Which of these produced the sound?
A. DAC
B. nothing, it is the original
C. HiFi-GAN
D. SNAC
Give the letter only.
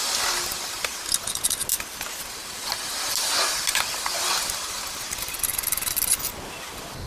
B